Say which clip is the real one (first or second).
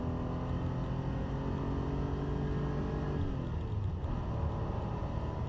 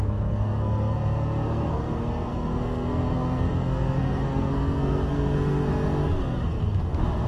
first